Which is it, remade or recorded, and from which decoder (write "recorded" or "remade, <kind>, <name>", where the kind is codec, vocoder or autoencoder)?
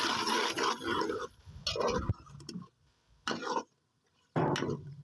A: recorded